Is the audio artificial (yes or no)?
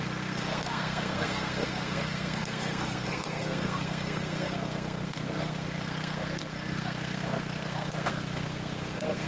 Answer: yes